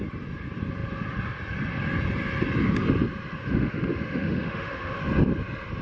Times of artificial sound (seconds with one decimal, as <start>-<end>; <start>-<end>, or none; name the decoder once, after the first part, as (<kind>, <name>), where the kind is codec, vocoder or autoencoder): 3.4-5.0 (autoencoder, DAC-VAE)